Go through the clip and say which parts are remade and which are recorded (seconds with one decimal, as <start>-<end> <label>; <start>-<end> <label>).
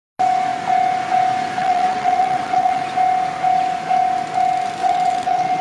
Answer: 0.0-1.6 recorded; 1.6-2.8 remade; 2.8-4.8 recorded; 4.8-5.6 remade